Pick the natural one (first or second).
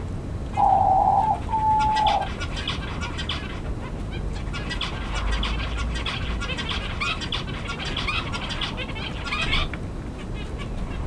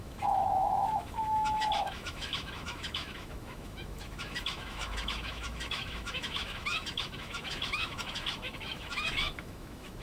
first